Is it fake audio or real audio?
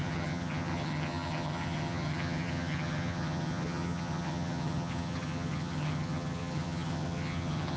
fake